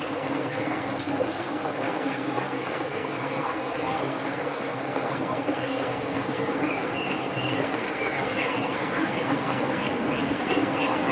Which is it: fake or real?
fake